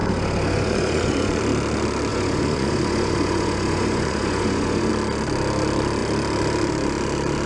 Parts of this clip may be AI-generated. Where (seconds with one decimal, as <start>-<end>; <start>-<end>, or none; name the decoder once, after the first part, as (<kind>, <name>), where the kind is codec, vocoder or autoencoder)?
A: 0.0-1.4 (vocoder, Vocos); 2.1-4.9